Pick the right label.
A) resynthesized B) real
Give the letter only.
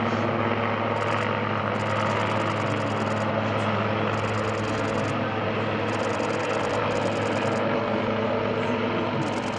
B